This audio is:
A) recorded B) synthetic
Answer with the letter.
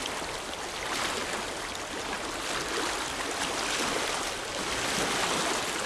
A